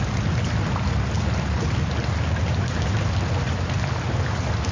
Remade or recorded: recorded